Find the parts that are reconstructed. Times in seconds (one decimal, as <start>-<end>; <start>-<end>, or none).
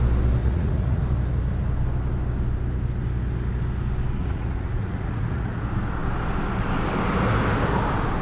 0.4-1.0; 4.2-5.6